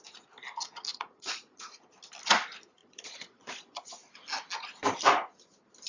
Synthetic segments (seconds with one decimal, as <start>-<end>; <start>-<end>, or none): 0.9-1.6; 2.8-3.9